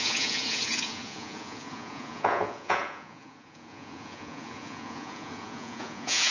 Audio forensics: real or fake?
fake